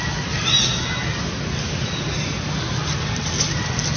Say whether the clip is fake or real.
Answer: real